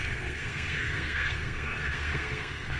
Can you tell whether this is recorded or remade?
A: remade